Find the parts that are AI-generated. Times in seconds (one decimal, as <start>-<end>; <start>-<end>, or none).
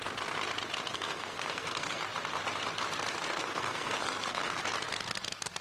0.9-2.0; 3.4-4.6